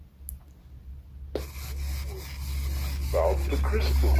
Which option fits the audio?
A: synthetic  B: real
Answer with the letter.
B